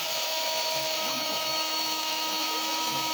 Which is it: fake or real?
fake